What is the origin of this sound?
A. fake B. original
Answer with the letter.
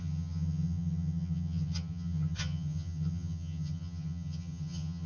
A